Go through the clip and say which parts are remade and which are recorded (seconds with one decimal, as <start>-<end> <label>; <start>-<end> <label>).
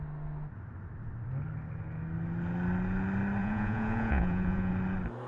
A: 0.0-3.4 recorded; 3.4-4.7 remade; 4.7-5.3 recorded